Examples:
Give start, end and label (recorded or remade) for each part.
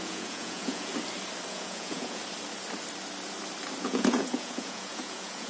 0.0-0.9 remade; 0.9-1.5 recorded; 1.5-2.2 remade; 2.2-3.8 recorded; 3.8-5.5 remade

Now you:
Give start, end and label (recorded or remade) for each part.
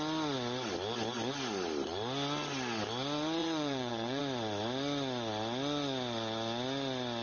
0.0-3.4 recorded; 3.4-4.2 remade; 4.2-7.2 recorded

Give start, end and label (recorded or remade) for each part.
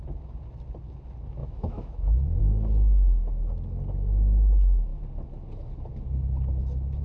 0.0-1.4 recorded; 1.4-2.4 remade; 2.4-7.0 recorded